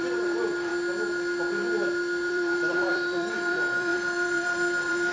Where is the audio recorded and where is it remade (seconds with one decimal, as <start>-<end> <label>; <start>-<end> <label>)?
0.0-0.7 remade; 0.7-2.3 recorded; 2.3-5.1 remade